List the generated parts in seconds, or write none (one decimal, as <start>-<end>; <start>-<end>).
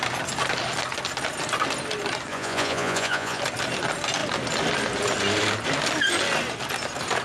2.3-3.4